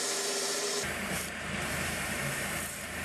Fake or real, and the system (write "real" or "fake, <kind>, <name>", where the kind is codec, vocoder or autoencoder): fake, vocoder, BigVGAN v2